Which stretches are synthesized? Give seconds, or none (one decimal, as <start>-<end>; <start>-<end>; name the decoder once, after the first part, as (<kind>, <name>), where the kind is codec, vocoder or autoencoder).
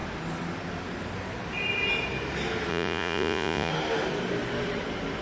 2.7-3.7 (vocoder, Vocos)